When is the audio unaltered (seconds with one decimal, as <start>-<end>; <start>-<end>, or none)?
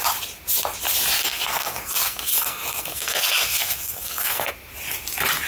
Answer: 0.0-1.2; 4.5-5.5